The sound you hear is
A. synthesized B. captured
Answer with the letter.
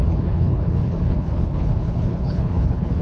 A